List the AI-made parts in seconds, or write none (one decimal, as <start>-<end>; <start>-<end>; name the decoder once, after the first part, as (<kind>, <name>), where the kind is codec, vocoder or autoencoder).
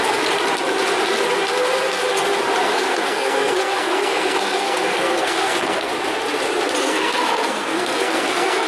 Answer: 2.6-5.9 (codec, SNAC); 6.8-8.7